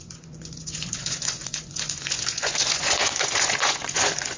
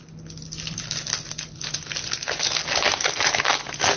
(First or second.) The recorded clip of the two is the second